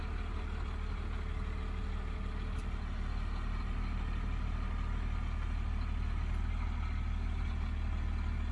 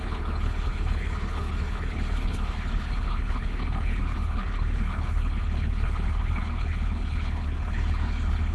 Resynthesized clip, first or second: second